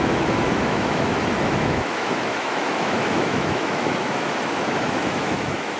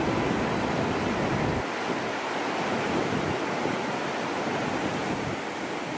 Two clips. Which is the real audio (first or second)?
second